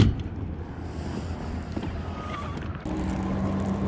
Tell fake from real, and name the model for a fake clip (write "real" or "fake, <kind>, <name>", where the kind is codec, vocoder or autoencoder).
real